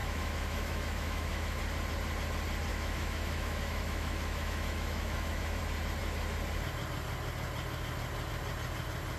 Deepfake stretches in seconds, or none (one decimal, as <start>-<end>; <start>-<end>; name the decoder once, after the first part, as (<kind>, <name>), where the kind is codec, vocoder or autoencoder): 0.0-1.6 (autoencoder, DAC-VAE); 2.7-5.6